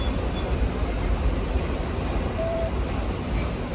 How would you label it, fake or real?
fake